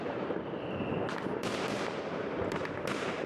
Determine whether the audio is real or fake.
fake